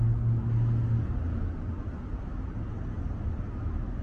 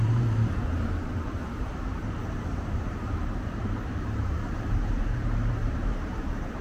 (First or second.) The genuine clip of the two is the first